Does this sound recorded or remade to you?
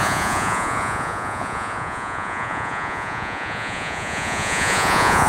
remade